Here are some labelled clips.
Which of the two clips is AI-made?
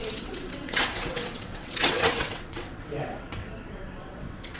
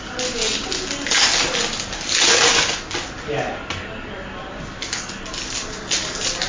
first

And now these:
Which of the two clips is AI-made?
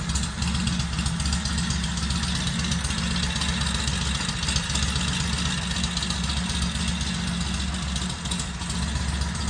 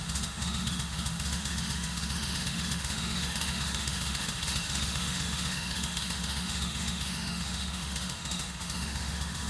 second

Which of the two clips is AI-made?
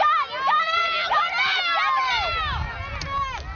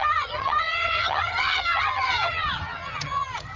second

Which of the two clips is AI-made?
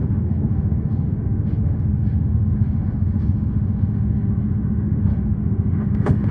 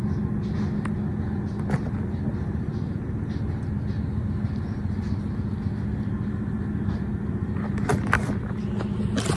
first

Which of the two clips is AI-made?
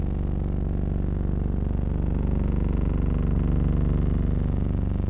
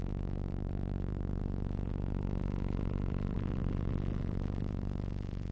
second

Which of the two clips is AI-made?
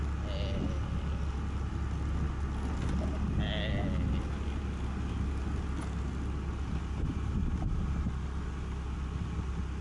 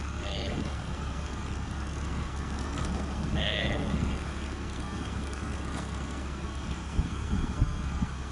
second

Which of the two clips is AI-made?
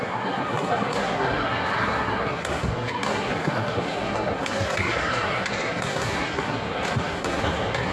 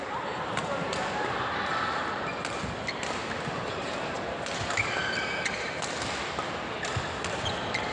first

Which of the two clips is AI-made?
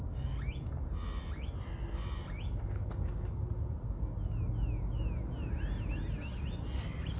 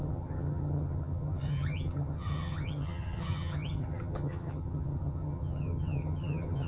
second